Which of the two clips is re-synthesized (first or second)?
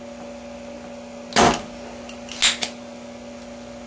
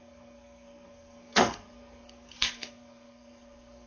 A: second